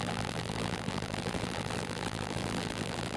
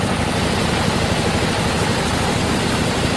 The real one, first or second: second